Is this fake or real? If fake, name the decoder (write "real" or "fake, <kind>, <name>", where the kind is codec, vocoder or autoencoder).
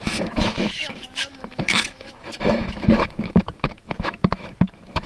fake, autoencoder, DAC-VAE